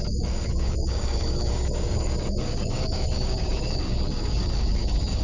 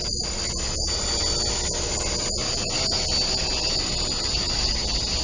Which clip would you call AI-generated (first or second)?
first